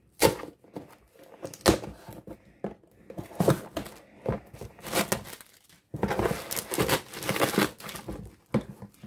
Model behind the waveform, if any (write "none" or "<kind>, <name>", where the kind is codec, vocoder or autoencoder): none